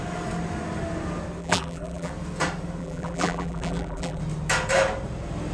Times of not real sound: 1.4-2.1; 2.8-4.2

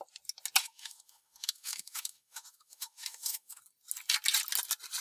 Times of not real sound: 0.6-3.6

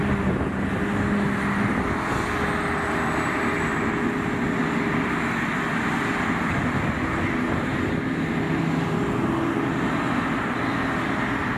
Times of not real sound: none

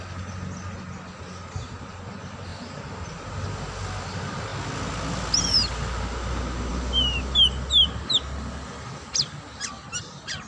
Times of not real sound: none

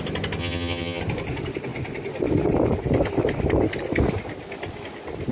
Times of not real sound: 0.4-1.0